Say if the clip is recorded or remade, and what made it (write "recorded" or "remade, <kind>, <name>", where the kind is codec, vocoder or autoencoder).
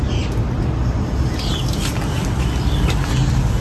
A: recorded